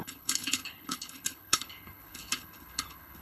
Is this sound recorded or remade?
remade